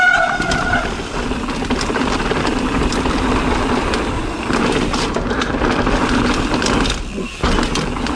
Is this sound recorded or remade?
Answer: recorded